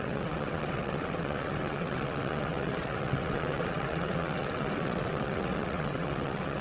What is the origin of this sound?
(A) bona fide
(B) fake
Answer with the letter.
B